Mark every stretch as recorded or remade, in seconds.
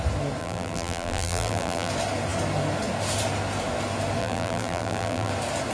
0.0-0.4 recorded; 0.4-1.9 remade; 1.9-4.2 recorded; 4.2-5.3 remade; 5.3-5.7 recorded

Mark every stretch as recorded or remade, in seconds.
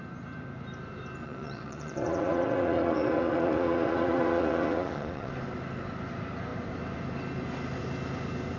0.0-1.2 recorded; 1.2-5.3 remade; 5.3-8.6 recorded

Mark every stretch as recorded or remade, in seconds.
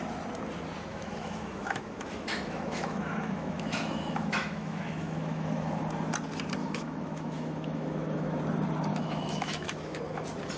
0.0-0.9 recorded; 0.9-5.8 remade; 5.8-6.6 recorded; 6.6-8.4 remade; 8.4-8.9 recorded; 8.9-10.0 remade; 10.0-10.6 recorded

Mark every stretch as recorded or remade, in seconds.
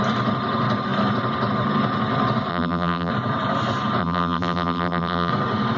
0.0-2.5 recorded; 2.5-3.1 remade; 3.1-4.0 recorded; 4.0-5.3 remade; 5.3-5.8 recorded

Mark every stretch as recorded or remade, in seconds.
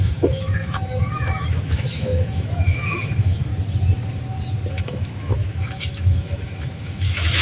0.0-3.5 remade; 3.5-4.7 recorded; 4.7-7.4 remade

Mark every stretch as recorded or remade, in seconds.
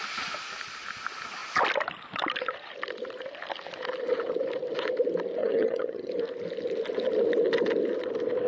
0.0-5.4 recorded; 5.4-6.1 remade; 6.1-8.5 recorded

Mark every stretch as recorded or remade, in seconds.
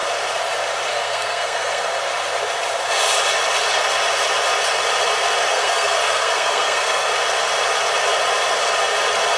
0.0-0.9 recorded; 0.9-2.0 remade; 2.0-5.5 recorded; 5.5-7.1 remade; 7.1-9.4 recorded